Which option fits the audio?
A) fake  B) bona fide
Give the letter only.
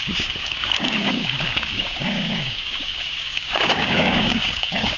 A